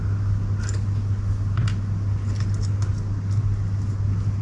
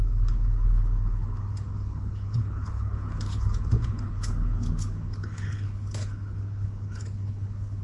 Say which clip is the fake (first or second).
second